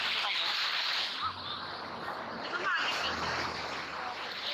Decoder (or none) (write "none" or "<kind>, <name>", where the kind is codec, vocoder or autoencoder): none